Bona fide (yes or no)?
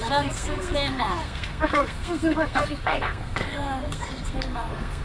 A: no